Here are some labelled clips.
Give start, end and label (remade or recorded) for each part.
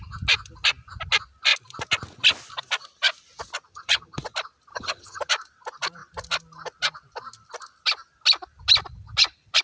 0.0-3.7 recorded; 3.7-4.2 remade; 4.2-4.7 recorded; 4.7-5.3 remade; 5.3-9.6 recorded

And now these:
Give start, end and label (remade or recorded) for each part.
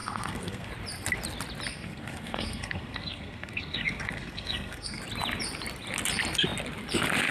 0.0-0.7 remade; 0.7-1.7 recorded; 1.7-5.0 remade; 5.0-7.3 recorded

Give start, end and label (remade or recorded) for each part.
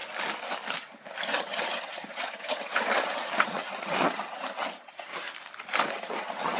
0.0-1.2 recorded; 1.2-5.1 remade; 5.1-5.9 recorded; 5.9-6.6 remade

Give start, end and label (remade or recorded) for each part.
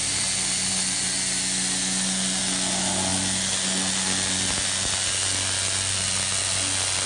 0.0-7.1 recorded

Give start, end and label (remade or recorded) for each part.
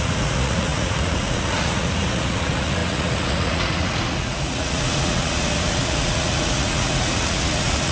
0.0-7.9 remade